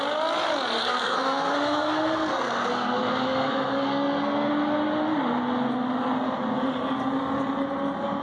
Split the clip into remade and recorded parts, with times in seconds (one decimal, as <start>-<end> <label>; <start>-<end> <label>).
0.0-0.8 recorded; 0.8-4.5 remade; 4.5-8.2 recorded